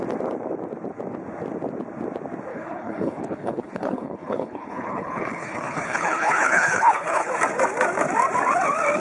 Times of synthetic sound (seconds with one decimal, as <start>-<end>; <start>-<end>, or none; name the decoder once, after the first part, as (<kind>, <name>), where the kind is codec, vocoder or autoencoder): 2.5-7.3 (codec, HILCodec)